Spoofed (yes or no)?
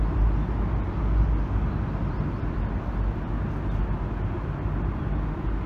no